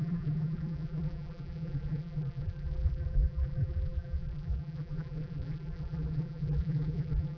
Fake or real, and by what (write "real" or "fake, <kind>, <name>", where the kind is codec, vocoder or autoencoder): fake, vocoder, BigVGAN v2